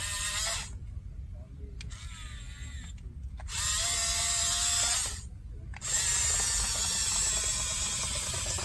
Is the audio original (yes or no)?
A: yes